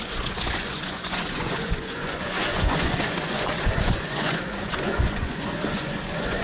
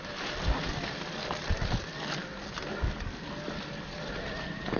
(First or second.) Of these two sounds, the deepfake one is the first